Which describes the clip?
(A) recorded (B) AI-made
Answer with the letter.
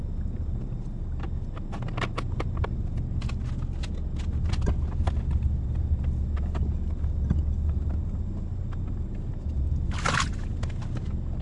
A